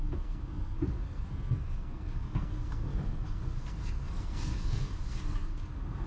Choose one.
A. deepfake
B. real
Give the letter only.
A